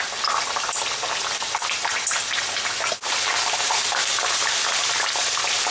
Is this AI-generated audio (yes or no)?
no